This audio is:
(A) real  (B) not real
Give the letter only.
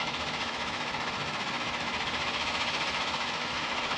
B